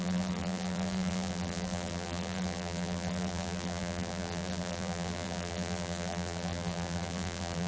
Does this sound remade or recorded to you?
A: remade